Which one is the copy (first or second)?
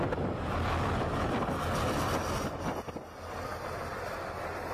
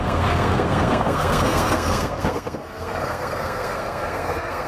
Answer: second